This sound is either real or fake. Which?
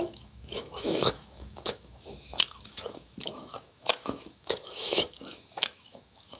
fake